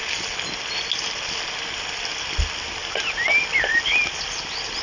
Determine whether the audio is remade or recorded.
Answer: recorded